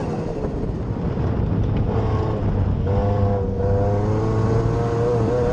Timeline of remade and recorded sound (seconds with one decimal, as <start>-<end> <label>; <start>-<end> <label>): 0.0-5.5 recorded